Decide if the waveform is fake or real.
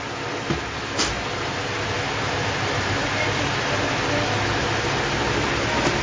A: real